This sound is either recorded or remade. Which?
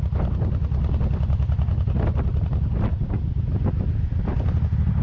recorded